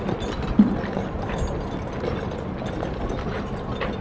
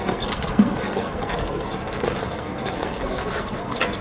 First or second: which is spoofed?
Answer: second